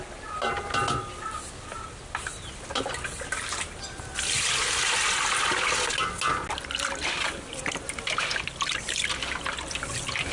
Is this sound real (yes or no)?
yes